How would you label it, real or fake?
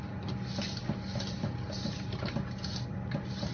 real